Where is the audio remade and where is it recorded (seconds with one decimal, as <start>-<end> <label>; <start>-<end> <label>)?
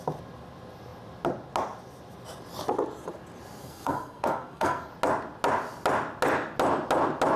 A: 0.0-3.6 recorded; 3.6-4.9 remade; 4.9-7.4 recorded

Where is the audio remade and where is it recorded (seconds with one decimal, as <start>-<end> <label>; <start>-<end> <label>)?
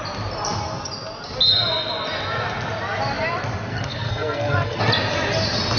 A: 0.0-3.7 recorded; 3.7-4.8 remade; 4.8-5.8 recorded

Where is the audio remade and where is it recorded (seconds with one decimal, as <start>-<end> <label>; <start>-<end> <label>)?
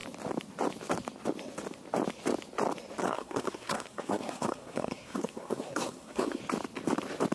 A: 0.0-3.0 recorded; 3.0-6.4 remade; 6.4-7.3 recorded